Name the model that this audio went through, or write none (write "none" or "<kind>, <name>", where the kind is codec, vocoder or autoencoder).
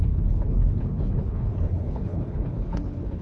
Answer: codec, HILCodec